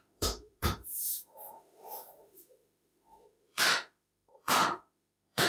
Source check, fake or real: fake